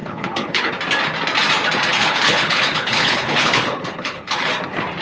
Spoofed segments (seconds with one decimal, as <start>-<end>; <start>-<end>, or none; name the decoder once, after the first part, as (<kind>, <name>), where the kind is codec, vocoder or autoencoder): 0.0-0.7 (codec, HILCodec); 1.9-4.5